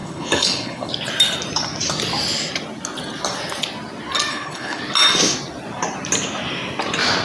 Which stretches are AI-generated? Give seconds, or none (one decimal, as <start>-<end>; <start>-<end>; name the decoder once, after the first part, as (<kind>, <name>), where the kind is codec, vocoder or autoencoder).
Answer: 0.0-0.9 (codec, HILCodec); 4.3-4.8